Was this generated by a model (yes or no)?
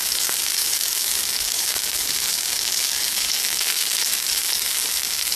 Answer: yes